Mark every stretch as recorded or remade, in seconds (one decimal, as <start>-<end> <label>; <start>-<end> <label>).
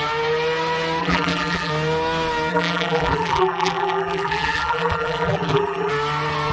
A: 0.0-1.0 recorded; 1.0-1.7 remade; 1.7-2.5 recorded; 2.5-5.9 remade; 5.9-6.5 recorded